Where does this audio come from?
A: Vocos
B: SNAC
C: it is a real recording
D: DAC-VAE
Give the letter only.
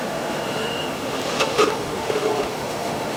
D